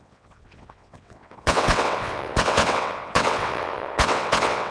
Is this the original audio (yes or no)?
no